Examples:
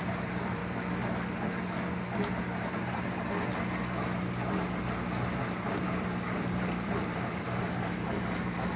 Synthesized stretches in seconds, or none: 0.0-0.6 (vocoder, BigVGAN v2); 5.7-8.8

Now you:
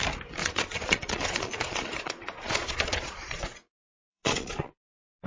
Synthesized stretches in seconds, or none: 0.4-3.6 (vocoder, Vocos); 4.1-4.7

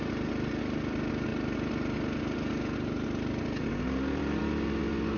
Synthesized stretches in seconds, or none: none

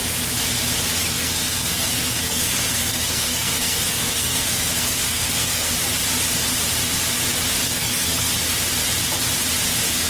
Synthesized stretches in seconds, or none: 1.0-5.7 (codec, SNAC); 7.6-8.3

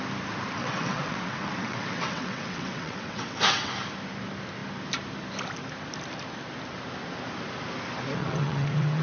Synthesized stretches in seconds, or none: 0.6-3.7 (vocoder, WaveNeXt); 8.2-9.0

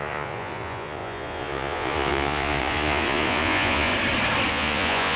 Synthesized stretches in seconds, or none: 0.0-3.9 (vocoder, Vocos); 4.5-5.2

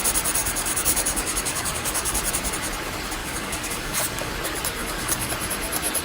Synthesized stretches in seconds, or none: 0.4-2.2 (codec, DAC); 3.2-4.3; 4.8-5.3

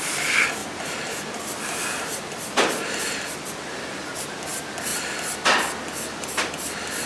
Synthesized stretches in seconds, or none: none